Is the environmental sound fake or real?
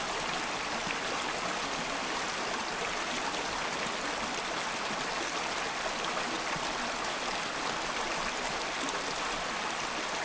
real